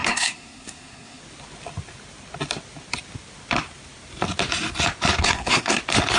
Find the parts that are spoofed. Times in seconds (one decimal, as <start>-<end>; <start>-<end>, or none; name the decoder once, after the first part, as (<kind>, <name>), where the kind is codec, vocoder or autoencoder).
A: 0.0-1.2 (codec, SNAC); 5.2-5.8